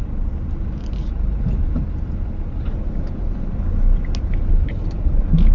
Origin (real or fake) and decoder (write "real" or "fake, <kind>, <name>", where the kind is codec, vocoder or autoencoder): real